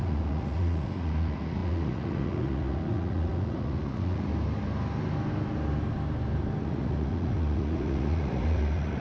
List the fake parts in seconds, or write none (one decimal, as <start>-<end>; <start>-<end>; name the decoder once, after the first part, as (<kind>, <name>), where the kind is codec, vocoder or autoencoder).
0.0-4.3 (vocoder, Vocos); 6.6-9.0